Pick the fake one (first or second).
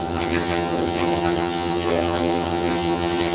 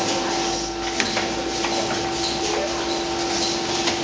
first